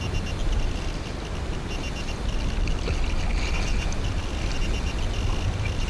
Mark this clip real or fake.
real